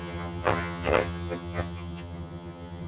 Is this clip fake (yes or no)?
yes